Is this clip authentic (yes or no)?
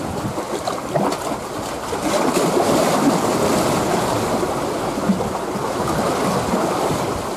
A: yes